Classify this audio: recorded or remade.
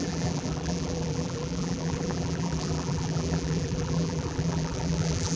remade